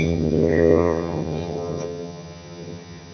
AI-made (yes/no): yes